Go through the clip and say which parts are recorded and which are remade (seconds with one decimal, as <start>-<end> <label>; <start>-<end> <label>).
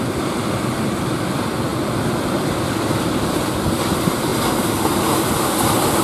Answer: 0.0-1.7 recorded; 1.7-3.6 remade; 3.6-4.3 recorded; 4.3-5.0 remade; 5.0-6.0 recorded